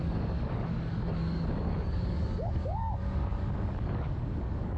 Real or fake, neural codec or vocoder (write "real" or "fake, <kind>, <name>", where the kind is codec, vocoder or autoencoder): fake, codec, DAC